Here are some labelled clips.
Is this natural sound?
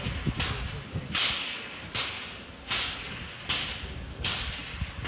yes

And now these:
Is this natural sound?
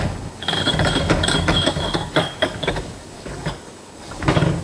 no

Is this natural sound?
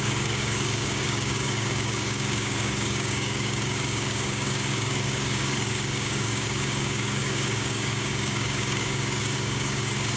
no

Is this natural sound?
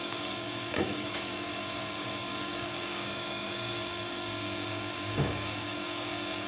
no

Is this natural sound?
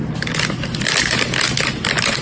yes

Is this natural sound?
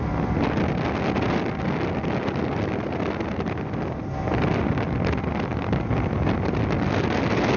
yes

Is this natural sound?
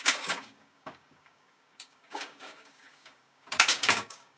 no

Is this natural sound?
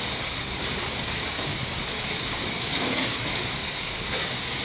no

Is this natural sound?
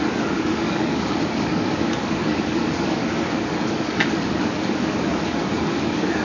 no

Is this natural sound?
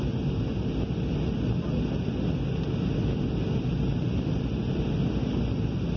yes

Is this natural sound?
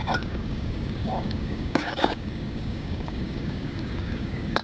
no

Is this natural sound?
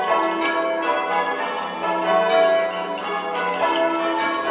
yes